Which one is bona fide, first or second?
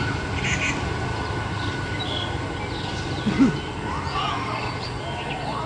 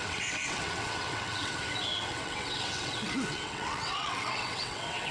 first